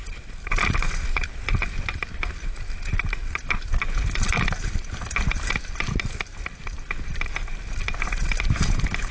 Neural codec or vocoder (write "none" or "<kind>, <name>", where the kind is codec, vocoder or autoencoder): none